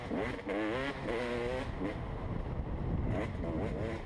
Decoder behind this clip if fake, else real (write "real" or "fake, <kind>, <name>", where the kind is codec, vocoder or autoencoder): real